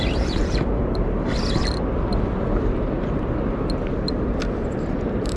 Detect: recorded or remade recorded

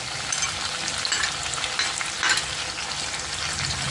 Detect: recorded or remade recorded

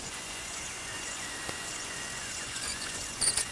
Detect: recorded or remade remade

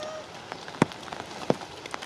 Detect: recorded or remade recorded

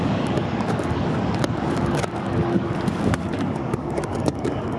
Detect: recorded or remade remade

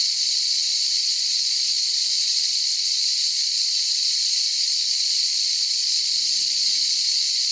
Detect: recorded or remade remade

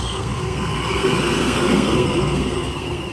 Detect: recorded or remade remade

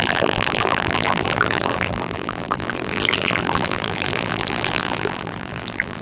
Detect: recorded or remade remade